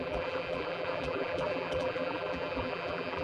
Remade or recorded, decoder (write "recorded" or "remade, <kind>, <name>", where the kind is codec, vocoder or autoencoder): remade, vocoder, BigVGAN v2